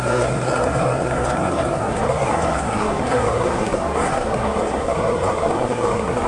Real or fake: fake